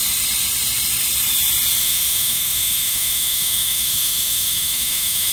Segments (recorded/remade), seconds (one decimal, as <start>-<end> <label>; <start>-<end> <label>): 0.0-1.8 recorded; 1.8-5.3 remade